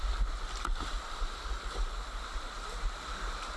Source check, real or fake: real